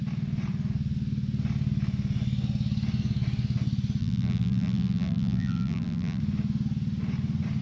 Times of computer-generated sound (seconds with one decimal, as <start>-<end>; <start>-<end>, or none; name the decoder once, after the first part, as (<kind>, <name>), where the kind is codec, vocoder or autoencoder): 4.0-6.2 (vocoder, BigVGAN v2)